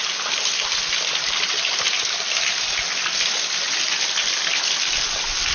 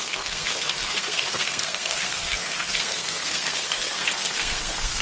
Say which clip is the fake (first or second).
second